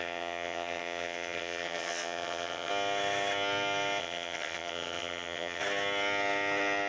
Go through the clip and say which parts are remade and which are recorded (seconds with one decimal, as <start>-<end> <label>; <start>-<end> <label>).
0.0-2.7 remade; 2.7-4.0 recorded; 4.0-5.6 remade; 5.6-6.9 recorded